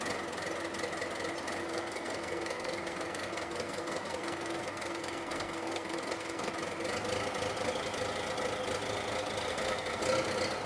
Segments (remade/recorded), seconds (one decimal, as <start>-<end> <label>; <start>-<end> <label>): 0.0-1.6 recorded; 1.6-6.5 remade; 6.5-9.5 recorded; 9.5-10.0 remade; 10.0-10.7 recorded